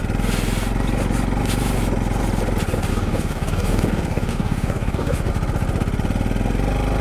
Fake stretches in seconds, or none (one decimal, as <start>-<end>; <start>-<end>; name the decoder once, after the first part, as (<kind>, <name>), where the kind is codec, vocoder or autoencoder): 2.9-5.3 (codec, DAC)